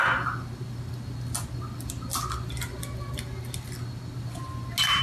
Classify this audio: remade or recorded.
recorded